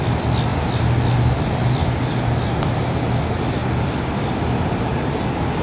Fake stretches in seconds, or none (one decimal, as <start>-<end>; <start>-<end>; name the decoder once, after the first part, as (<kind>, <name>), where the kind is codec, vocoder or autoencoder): none

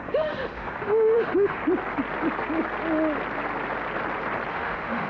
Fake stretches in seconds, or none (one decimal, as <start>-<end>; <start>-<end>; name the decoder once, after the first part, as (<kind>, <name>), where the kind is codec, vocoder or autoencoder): 0.0-1.6 (autoencoder, DAC-VAE); 4.5-5.1

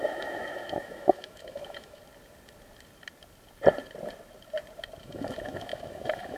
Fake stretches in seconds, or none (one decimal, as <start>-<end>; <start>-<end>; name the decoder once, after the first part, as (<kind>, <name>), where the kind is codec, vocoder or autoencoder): 0.0-2.0 (autoencoder, DAC-VAE); 5.0-6.4